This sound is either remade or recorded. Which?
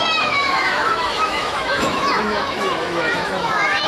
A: remade